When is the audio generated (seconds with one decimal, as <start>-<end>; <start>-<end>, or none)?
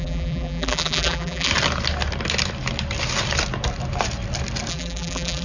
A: 0.0-1.5; 4.7-5.4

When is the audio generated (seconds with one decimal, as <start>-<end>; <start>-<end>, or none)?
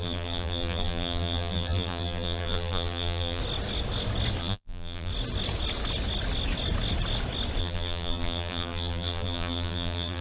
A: 0.0-3.4; 4.4-5.1; 7.6-10.2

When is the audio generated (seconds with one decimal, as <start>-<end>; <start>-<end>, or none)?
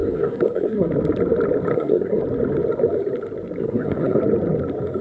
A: 0.0-0.9; 1.7-2.2; 3.6-4.2